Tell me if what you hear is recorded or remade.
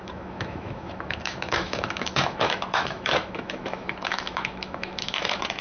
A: remade